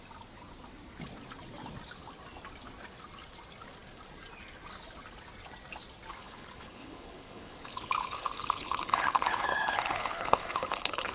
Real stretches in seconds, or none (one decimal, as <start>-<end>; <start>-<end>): 0.0-6.1